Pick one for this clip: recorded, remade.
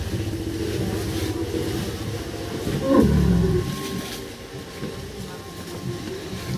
recorded